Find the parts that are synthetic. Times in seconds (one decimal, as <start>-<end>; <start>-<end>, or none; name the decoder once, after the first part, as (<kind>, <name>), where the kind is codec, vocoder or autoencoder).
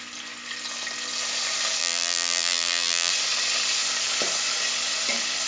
1.8-3.1 (vocoder, BigVGAN v2)